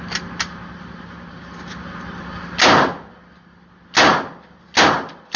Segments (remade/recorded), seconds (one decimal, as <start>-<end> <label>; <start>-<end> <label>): 0.0-5.4 recorded